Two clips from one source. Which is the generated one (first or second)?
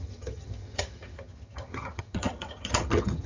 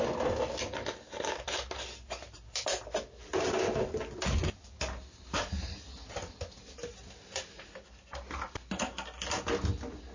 first